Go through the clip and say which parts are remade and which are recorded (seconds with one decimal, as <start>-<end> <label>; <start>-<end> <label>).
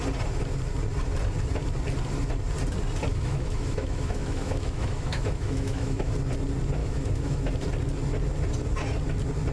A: 0.0-3.1 recorded; 3.1-6.1 remade; 6.1-6.8 recorded; 6.8-7.5 remade; 7.5-9.5 recorded